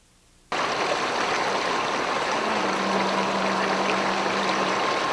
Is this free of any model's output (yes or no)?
yes